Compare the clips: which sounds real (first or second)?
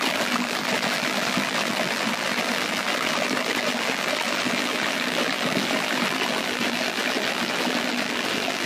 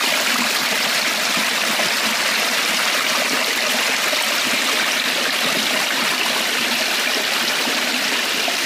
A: second